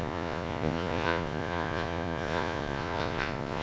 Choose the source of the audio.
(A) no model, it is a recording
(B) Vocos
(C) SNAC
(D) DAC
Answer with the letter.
B